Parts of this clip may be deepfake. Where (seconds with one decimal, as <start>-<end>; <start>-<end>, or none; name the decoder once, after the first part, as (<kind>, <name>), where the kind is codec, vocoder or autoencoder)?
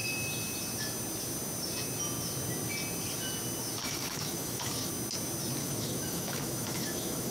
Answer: 3.8-4.9 (autoencoder, DAC-VAE); 5.6-7.3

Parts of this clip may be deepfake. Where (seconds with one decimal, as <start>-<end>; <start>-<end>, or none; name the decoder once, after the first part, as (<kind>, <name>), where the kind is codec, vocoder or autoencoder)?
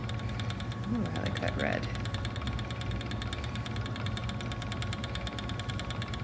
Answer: none